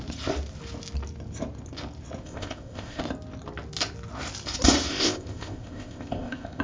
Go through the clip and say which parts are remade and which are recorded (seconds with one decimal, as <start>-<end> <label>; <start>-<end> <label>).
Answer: 0.0-2.2 recorded; 2.2-3.0 remade; 3.0-4.9 recorded; 4.9-6.6 remade